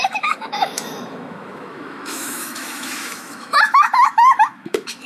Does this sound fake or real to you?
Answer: fake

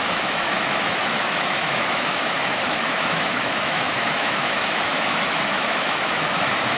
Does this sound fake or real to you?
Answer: fake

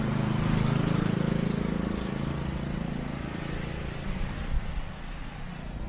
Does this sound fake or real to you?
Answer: real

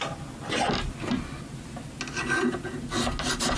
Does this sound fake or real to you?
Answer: real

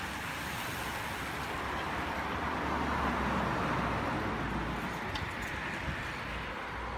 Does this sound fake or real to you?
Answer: real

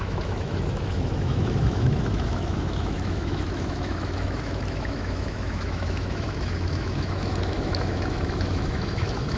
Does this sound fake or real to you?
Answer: fake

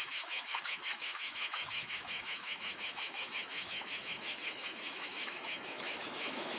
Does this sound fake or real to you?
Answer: fake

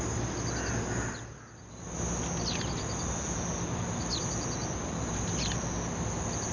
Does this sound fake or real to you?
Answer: real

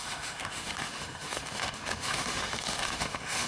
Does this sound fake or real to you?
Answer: fake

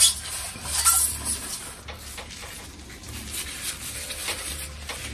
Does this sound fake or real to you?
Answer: real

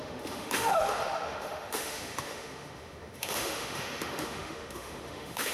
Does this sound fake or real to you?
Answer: fake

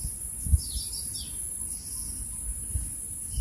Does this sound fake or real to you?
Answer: real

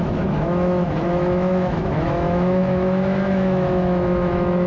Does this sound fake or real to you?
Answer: fake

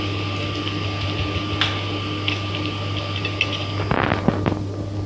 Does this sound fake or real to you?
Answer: real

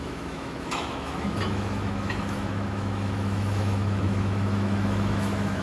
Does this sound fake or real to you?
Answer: fake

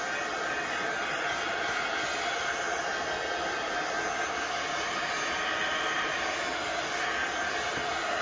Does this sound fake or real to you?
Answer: real